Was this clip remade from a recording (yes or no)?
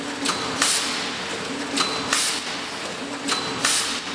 no